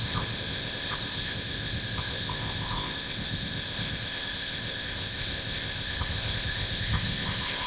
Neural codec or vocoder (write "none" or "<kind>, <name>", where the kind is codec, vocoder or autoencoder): codec, ZipCodec